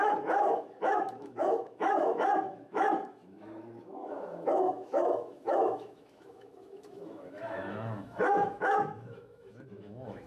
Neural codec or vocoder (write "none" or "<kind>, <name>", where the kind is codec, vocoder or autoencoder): autoencoder, DAC-VAE